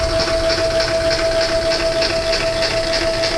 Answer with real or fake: real